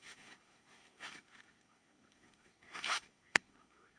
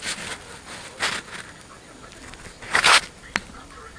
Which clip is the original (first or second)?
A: second